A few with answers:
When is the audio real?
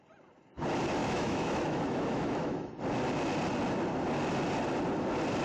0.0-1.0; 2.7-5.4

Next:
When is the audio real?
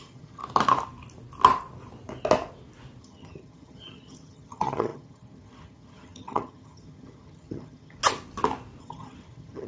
0.4-3.0; 8.0-8.8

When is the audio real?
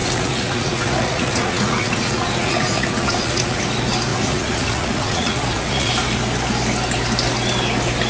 3.6-4.1; 5.9-8.1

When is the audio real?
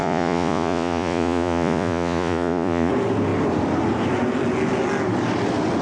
2.9-5.8